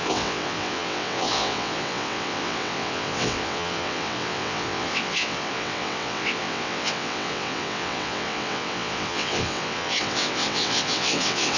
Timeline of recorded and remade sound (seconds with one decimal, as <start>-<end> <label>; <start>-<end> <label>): 0.0-11.6 remade